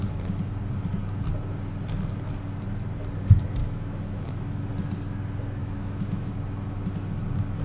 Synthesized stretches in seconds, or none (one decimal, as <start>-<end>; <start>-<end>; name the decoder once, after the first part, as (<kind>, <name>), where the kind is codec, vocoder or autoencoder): 3.6-4.7 (autoencoder, DAC-VAE); 5.6-6.3